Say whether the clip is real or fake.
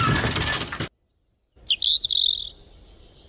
real